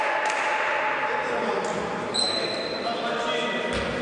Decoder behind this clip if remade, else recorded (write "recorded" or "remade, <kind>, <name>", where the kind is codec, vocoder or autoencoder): recorded